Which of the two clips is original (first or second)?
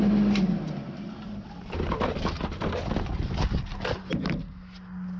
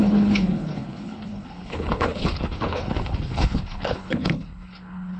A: first